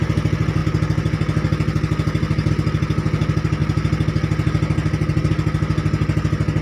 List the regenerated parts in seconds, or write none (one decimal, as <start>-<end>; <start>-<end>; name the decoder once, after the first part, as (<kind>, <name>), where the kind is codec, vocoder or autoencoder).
none